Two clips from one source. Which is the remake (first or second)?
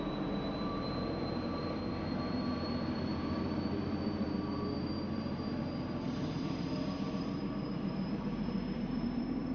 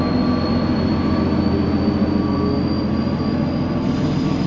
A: first